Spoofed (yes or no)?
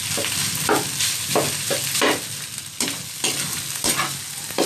no